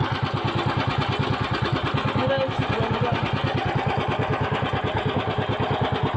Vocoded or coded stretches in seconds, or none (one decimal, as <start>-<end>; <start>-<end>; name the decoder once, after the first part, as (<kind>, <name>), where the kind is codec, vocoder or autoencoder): none